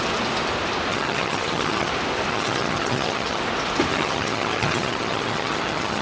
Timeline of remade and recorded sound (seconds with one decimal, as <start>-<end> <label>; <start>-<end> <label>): 0.0-0.9 recorded; 0.9-1.9 remade; 1.9-2.3 recorded; 2.3-3.4 remade; 3.4-3.9 recorded; 3.9-6.0 remade